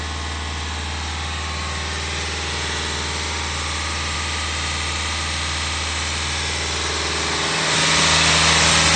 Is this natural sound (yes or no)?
yes